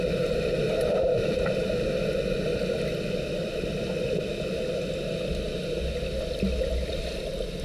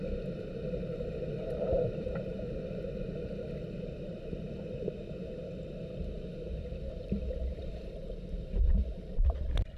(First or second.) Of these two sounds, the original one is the first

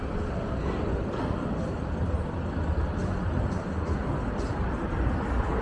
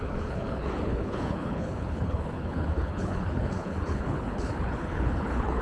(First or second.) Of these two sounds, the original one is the first